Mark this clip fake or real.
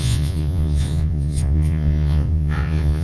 fake